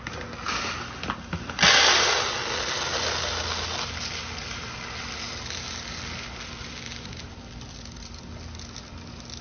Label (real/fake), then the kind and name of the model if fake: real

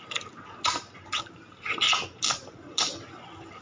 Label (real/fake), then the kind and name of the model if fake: real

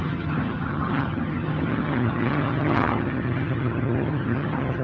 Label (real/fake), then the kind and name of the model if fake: fake, vocoder, HiFi-GAN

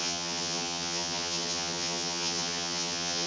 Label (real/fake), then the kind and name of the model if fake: fake, vocoder, HiFi-GAN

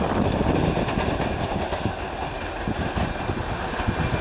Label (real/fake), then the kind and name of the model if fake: real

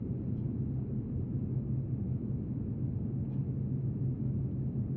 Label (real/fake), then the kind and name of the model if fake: real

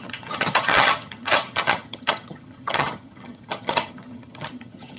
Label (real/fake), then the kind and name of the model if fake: fake, vocoder, HiFi-GAN